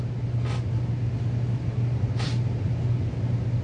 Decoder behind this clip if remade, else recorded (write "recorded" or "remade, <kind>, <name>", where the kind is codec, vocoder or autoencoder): recorded